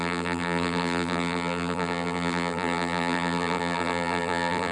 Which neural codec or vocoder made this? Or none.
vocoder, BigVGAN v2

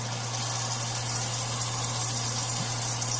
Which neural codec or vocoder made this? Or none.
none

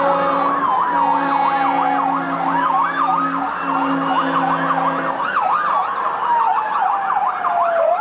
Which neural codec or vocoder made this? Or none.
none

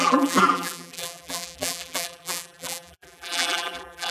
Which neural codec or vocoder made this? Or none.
vocoder, BigVGAN v2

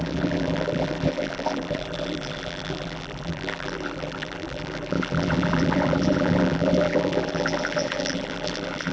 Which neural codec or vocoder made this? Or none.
vocoder, BigVGAN v2